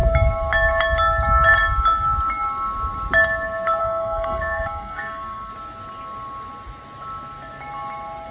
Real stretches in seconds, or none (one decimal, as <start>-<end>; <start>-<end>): 0.0-3.8; 5.5-8.3